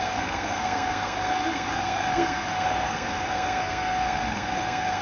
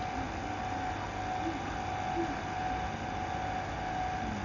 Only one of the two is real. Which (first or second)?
second